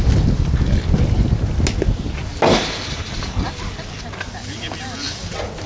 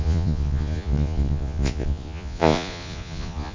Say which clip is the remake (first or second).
second